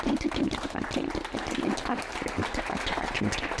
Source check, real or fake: real